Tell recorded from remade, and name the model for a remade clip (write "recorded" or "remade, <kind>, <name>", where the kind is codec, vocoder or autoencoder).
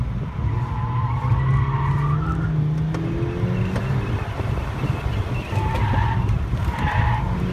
recorded